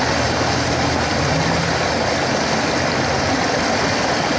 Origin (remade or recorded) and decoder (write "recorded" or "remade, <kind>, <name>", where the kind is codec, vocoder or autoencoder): recorded